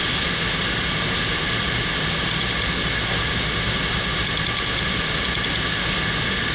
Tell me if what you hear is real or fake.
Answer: real